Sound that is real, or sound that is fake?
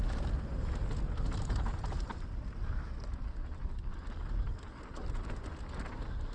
real